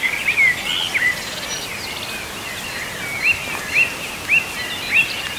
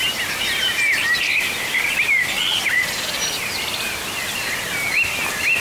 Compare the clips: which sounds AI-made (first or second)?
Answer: second